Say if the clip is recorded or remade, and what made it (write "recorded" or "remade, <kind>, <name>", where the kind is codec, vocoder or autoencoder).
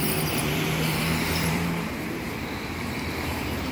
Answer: remade, vocoder, BigVGAN v2